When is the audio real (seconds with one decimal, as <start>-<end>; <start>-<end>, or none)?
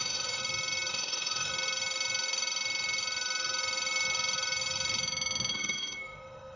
0.4-0.9; 1.5-5.5